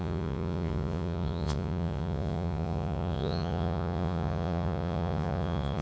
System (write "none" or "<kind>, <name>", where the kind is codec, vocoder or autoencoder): vocoder, Vocos